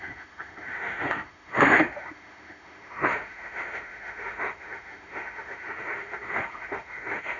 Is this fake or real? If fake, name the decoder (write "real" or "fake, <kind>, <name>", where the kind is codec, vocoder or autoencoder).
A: fake, autoencoder, DAC-VAE